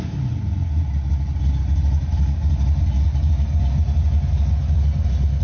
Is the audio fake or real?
real